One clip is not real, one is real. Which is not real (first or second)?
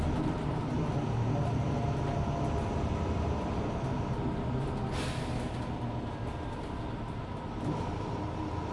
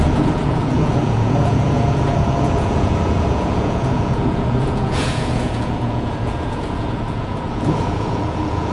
second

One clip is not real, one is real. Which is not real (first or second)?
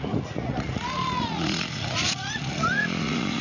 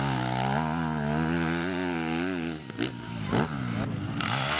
first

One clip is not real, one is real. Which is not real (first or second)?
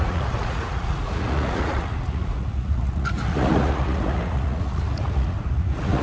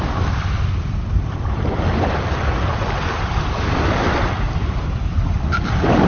first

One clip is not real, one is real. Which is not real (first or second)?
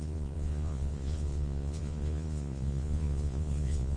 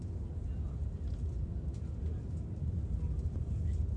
first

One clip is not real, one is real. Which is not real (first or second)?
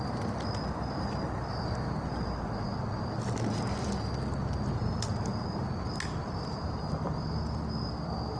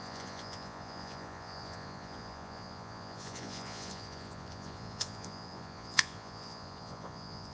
second